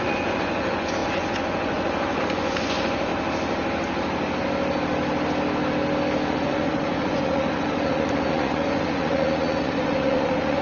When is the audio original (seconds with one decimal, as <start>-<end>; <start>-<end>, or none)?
3.1-6.3